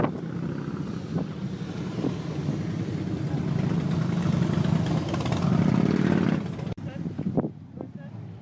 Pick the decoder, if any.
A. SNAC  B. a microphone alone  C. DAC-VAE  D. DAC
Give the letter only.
B